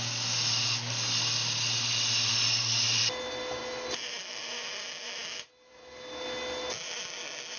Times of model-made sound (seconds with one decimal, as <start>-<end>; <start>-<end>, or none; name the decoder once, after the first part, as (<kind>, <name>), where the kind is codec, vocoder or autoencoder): none